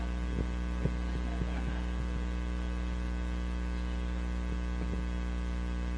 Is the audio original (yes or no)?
yes